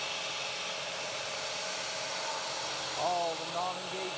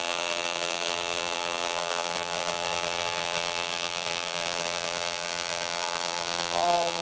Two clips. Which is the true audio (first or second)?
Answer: first